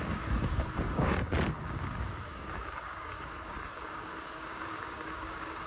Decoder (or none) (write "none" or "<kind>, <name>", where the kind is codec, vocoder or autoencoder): codec, DAC